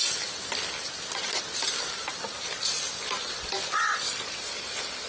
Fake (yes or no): yes